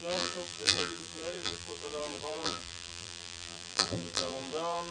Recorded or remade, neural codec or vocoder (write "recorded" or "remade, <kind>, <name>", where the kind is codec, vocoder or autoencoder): remade, vocoder, BigVGAN v2